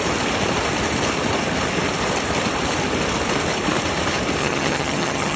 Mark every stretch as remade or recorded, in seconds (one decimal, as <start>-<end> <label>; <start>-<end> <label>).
0.0-4.4 recorded; 4.4-5.4 remade